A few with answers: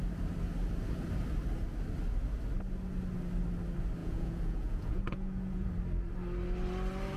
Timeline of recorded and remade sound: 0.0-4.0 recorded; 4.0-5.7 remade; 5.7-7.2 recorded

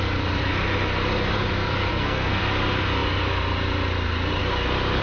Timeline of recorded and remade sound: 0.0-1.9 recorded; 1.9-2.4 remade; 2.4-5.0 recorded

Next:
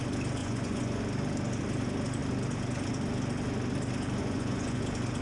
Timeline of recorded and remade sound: 0.0-0.4 recorded; 0.4-1.0 remade; 1.0-4.2 recorded; 4.2-4.8 remade; 4.8-5.2 recorded

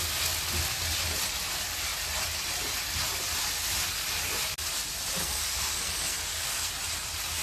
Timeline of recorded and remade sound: 0.0-5.2 recorded; 5.2-6.7 remade; 6.7-7.4 recorded

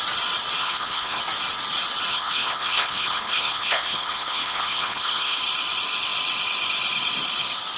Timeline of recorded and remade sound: 0.0-0.6 recorded; 0.6-1.2 remade; 1.2-2.1 recorded; 2.1-5.4 remade; 5.4-7.8 recorded